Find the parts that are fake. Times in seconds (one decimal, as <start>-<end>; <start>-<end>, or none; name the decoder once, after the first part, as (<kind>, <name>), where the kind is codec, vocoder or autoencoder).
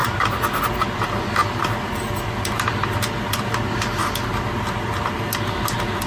none